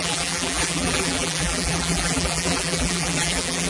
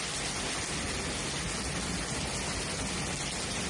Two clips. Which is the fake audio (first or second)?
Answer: first